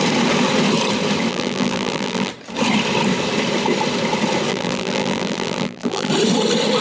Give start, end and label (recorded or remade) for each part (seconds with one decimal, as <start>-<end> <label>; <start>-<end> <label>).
0.0-1.3 recorded; 1.3-2.3 remade; 2.3-4.5 recorded; 4.5-6.1 remade; 6.1-6.8 recorded